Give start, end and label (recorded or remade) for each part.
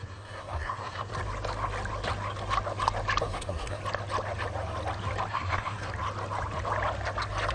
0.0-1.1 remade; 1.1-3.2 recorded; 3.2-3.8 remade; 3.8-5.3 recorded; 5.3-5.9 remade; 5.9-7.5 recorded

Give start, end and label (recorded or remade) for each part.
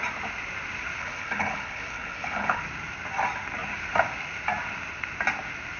0.0-1.0 recorded; 1.0-2.6 remade; 2.6-5.8 recorded